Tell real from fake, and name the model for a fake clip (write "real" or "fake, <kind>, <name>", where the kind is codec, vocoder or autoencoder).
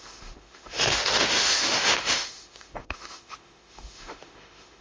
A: fake, autoencoder, DAC-VAE